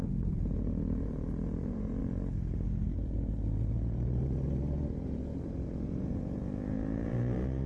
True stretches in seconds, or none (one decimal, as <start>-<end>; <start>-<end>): 2.0-3.7